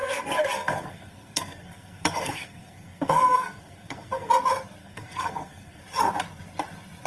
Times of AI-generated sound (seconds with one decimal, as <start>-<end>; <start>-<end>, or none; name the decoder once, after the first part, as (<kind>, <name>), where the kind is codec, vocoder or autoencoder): 0.0-4.3 (codec, SNAC); 4.8-5.8

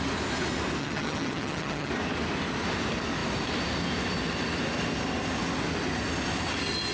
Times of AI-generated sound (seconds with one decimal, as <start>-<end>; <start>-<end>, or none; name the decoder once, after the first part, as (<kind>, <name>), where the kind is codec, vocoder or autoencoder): 0.8-1.9 (vocoder, HiFi-GAN)

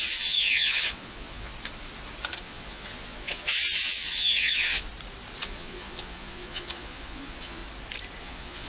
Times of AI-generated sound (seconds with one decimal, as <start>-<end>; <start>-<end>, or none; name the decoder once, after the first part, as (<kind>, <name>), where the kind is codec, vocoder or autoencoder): 0.0-1.5 (vocoder, Vocos); 2.4-4.9; 5.4-7.6; 8.2-8.7

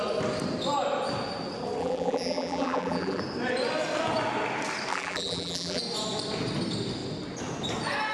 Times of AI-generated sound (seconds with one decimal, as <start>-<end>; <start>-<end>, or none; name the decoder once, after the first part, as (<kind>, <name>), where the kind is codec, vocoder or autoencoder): 1.8-3.2 (vocoder, BigVGAN v2); 4.9-5.8

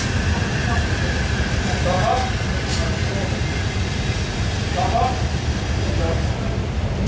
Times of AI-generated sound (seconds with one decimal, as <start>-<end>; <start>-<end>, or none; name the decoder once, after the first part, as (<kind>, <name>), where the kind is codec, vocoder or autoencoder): none

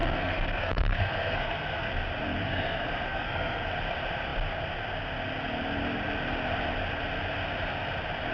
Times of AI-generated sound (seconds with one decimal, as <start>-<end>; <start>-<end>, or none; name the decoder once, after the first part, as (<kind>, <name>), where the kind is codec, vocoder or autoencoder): 0.0-1.9 (codec, SNAC); 2.4-3.7